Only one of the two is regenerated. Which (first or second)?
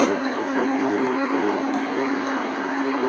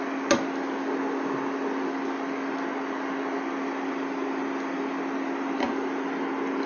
first